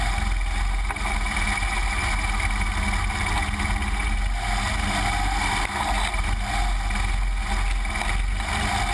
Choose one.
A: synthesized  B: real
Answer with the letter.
B